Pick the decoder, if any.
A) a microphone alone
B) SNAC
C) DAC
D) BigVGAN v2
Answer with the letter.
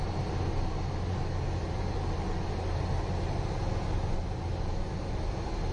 A